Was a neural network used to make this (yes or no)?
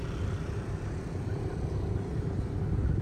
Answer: no